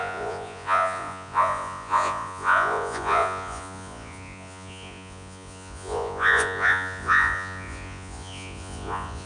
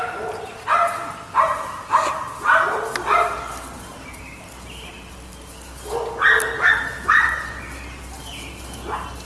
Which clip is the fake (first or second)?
first